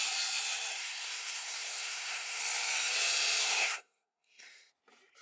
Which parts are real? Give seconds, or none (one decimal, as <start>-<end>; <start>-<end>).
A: 0.0-0.7; 2.4-3.4; 4.7-5.2

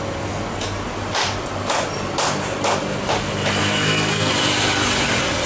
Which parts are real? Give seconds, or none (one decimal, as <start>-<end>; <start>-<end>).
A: 0.0-3.6; 4.3-5.5